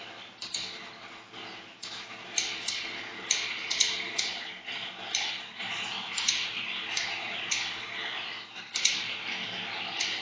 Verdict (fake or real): real